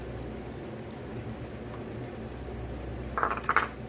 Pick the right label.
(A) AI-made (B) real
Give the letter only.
B